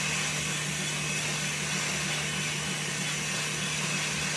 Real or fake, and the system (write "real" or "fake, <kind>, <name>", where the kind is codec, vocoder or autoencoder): real